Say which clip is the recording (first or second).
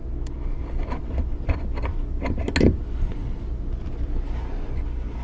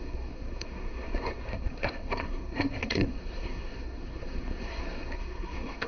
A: first